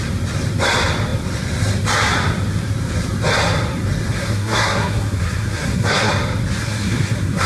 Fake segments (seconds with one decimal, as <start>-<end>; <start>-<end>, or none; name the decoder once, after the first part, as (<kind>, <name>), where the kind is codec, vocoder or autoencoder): 4.1-6.1 (codec, SNAC); 6.6-7.5